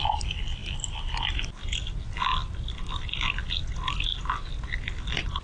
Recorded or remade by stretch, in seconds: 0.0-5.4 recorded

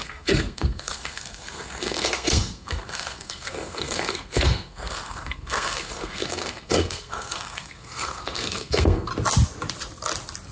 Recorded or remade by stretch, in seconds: 0.0-9.1 remade; 9.1-10.5 recorded

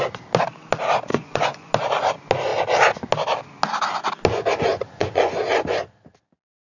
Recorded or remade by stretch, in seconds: 0.0-1.1 recorded; 1.1-1.7 remade; 1.7-4.7 recorded; 4.7-5.3 remade; 5.3-6.8 recorded

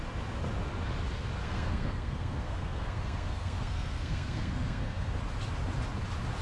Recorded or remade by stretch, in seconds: 0.0-1.4 recorded; 1.4-5.2 remade; 5.2-6.4 recorded

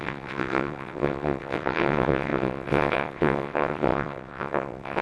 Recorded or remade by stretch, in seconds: 0.0-5.0 remade

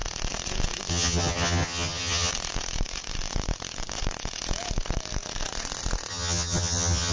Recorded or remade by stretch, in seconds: 0.0-0.9 recorded; 0.9-2.3 remade; 2.3-6.1 recorded; 6.1-7.1 remade

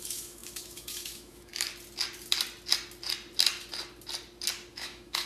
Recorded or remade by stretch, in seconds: 0.0-1.5 remade; 1.5-4.7 recorded; 4.7-5.3 remade

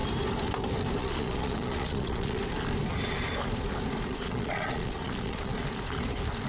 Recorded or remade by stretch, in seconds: 0.0-1.0 recorded; 1.0-2.4 remade; 2.4-4.1 recorded; 4.1-5.5 remade; 5.5-6.5 recorded